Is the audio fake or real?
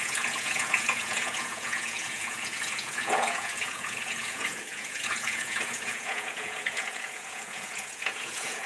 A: fake